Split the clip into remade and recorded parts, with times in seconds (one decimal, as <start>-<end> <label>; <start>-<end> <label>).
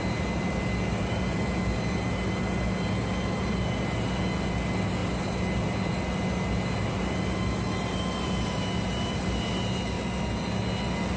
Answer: 0.0-11.2 recorded